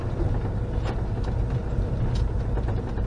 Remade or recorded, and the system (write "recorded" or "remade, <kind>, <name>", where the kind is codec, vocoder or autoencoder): recorded